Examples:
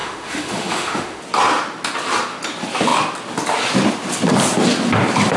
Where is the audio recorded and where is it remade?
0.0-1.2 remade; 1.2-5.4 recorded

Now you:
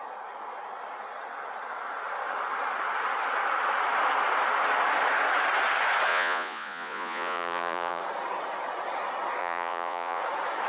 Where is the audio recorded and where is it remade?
0.0-6.1 recorded; 6.1-8.0 remade; 8.0-9.4 recorded; 9.4-10.2 remade; 10.2-10.7 recorded